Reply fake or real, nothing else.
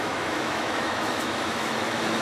fake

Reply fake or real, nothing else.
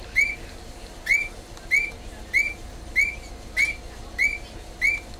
real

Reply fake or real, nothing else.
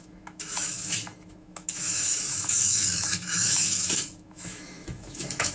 fake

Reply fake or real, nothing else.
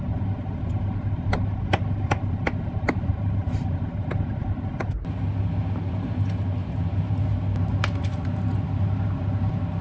real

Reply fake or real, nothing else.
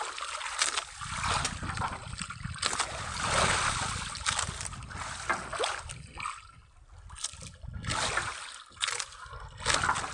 real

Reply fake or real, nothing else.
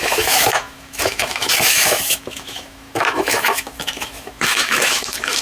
fake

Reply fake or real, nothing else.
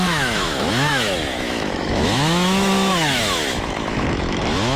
fake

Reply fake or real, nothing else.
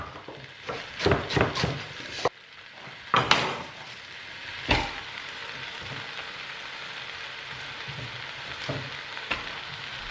real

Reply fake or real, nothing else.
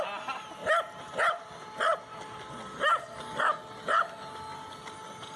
real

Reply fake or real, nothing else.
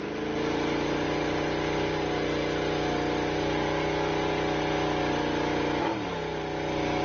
real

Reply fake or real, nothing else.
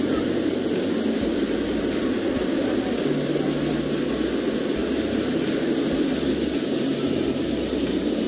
real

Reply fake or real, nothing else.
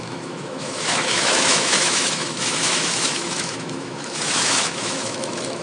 fake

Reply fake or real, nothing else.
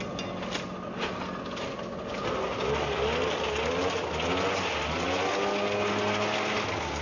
real